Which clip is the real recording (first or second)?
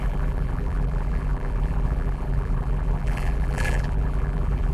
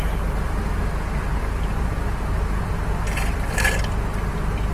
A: second